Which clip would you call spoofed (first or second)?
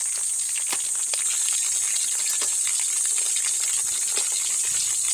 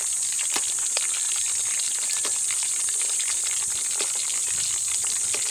second